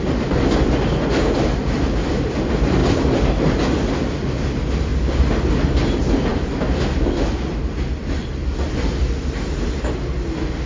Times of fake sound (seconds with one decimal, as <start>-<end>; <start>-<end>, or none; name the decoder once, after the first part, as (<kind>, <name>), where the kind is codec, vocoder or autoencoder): 8.2-9.0 (vocoder, BigVGAN v2)